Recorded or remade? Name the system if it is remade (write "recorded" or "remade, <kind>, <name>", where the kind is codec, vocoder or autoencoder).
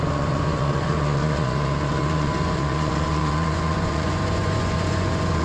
remade, vocoder, Vocos